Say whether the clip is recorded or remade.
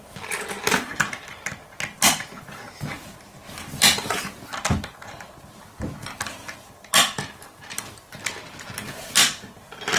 recorded